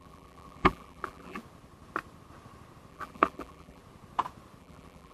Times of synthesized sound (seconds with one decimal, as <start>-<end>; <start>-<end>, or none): 0.0-1.4; 2.9-3.8; 4.6-5.1